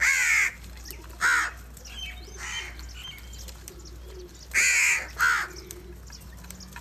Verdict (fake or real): real